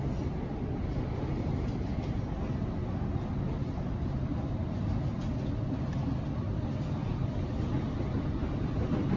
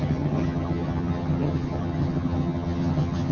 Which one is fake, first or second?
second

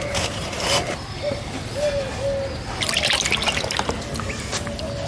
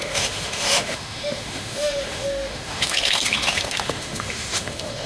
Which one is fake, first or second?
second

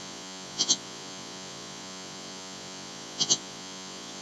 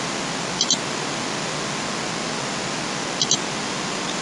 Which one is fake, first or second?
first